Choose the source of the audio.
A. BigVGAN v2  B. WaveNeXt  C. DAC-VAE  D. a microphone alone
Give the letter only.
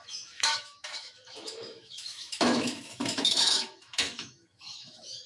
C